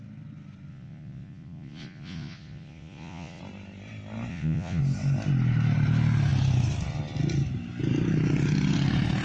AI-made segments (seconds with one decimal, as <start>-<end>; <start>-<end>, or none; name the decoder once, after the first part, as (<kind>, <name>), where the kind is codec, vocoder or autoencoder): 0.7-3.4 (vocoder, Vocos); 4.3-4.8